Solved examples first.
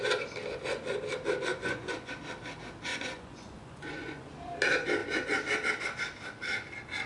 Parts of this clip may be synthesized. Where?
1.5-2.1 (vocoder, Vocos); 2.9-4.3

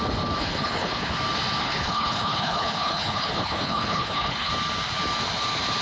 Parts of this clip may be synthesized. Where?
0.4-1.1 (codec, HILCodec); 1.6-4.5

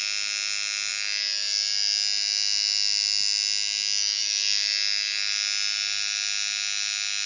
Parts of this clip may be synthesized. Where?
none

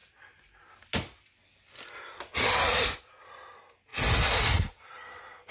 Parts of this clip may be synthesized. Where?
none

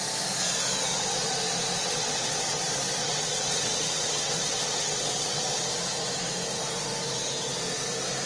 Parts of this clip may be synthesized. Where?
1.8-2.6 (vocoder, WaveNeXt); 3.0-5.4